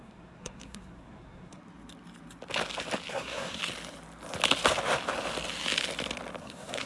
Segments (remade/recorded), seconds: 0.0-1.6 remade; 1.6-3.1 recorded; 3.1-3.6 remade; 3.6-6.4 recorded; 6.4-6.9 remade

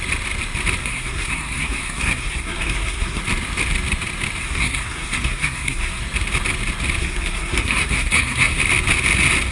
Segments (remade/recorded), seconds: 0.0-0.8 recorded; 0.8-3.2 remade; 3.2-4.4 recorded; 4.4-6.0 remade; 6.0-7.0 recorded; 7.0-8.6 remade; 8.6-9.5 recorded